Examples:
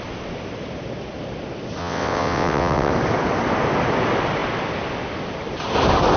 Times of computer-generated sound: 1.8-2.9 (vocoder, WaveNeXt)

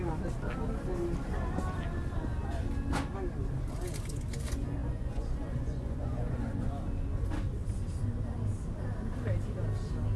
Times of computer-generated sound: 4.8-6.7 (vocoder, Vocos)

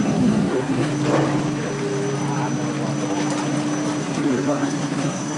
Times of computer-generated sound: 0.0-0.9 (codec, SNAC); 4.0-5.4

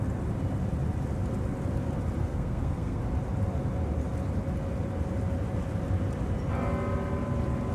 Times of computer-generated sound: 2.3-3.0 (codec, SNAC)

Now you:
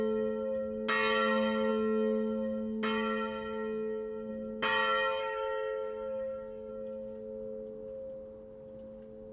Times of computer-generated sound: 5.2-6.7 (autoencoder, DAC-VAE)

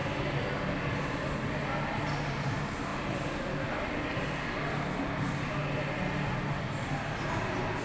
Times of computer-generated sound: none